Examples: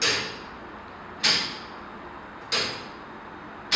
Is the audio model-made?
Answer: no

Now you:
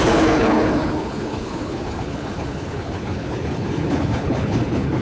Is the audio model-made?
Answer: yes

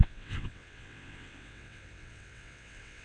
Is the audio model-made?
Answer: yes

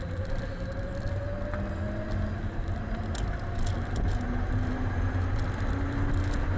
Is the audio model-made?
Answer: no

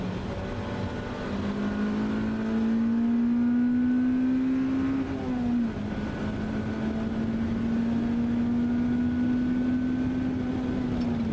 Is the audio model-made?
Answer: no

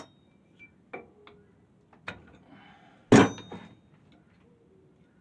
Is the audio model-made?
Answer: no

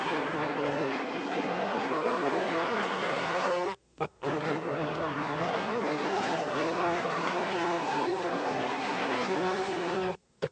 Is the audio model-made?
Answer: yes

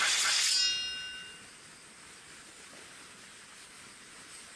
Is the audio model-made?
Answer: no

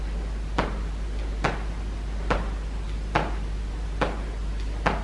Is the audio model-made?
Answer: no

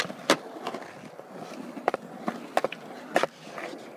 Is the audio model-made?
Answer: no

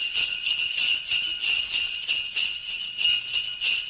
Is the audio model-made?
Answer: no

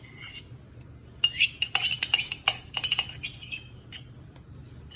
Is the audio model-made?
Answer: no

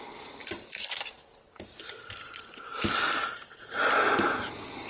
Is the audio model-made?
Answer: yes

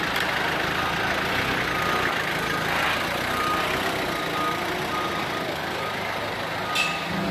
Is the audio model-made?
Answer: no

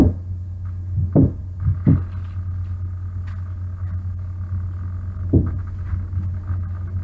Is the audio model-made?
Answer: no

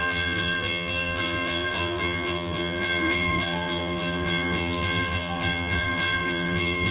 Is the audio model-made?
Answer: yes